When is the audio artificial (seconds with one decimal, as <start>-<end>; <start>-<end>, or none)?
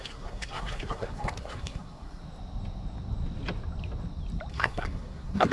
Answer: 0.0-2.2; 4.5-5.5